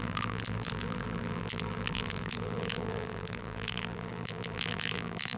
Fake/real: fake